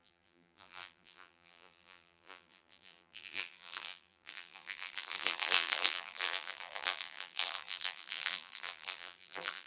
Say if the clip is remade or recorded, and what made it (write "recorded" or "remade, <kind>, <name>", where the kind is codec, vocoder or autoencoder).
remade, vocoder, BigVGAN v2